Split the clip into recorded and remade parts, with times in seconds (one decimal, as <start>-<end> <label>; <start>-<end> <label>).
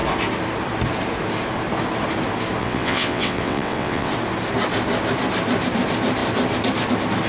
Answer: 0.0-2.6 recorded; 2.6-4.1 remade; 4.1-7.3 recorded